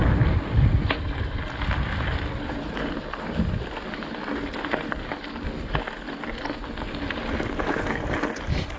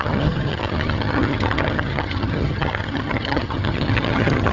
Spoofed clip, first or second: second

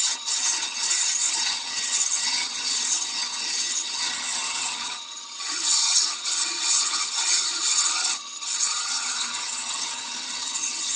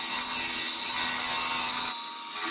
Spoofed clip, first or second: first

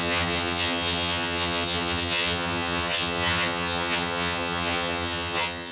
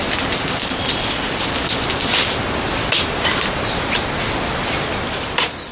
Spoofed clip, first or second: first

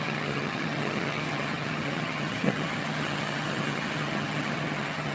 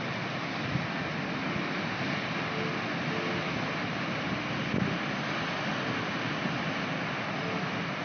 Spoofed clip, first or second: first